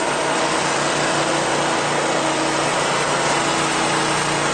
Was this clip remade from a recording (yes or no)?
no